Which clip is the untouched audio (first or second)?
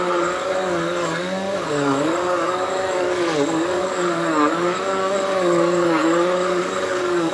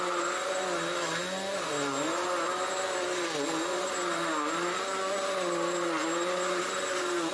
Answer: second